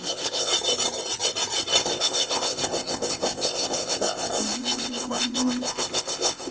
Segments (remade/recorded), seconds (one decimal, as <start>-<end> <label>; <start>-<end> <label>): 0.0-0.5 remade; 0.5-1.8 recorded; 1.8-6.5 remade